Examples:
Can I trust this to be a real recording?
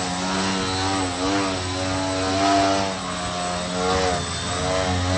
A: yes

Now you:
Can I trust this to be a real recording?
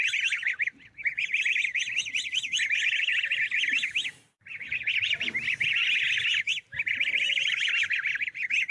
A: yes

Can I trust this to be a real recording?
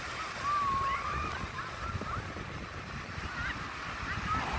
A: yes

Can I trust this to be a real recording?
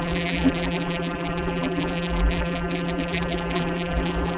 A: no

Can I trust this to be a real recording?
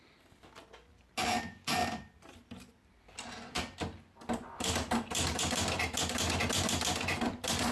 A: no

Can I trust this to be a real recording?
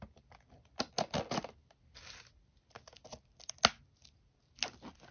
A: yes